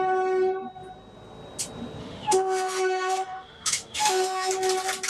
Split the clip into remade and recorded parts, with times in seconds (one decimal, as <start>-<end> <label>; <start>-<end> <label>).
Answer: 0.0-2.0 recorded; 2.0-4.5 remade; 4.5-5.1 recorded